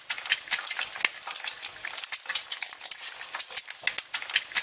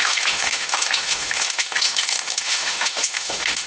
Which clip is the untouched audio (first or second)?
first